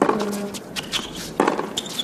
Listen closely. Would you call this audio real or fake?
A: real